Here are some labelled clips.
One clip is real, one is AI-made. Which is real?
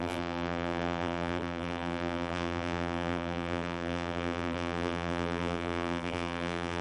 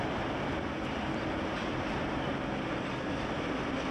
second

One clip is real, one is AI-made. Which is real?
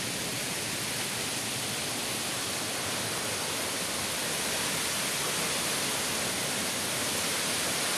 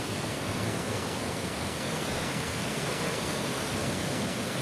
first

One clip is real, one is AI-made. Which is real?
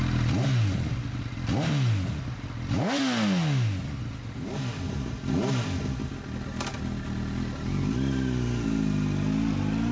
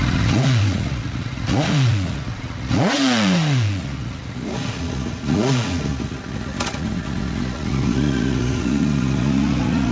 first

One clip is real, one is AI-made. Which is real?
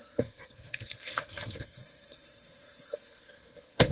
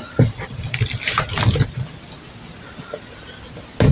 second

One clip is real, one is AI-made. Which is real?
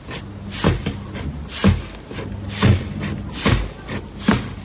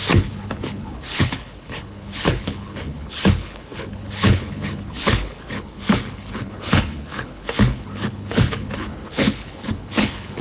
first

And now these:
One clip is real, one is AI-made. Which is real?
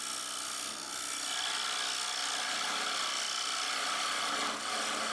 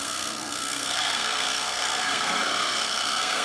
first